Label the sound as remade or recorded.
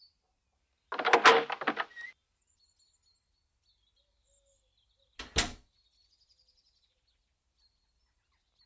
recorded